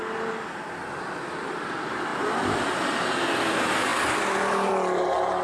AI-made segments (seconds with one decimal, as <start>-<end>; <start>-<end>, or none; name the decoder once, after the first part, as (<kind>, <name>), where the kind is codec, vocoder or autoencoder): none